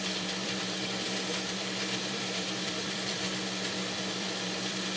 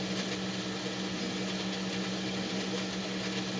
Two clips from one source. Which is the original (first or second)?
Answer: second